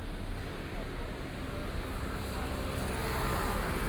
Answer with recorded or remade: recorded